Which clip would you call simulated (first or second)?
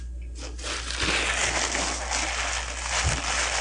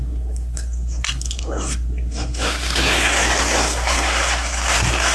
second